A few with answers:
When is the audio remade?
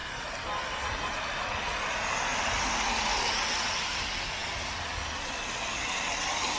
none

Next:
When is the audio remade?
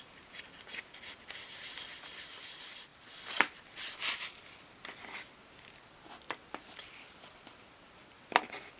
none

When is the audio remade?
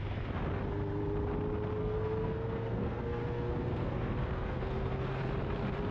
1.8-5.1 (codec, SNAC)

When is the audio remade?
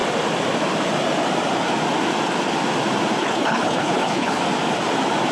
3.2-4.4 (codec, HILCodec)